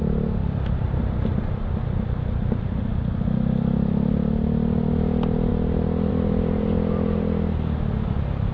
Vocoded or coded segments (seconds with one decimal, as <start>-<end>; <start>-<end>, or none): none